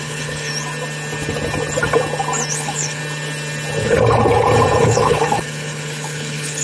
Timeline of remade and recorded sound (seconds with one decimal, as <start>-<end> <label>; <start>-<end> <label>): 0.0-0.5 remade; 0.5-2.5 recorded; 2.5-3.0 remade; 3.0-4.8 recorded; 4.8-6.6 remade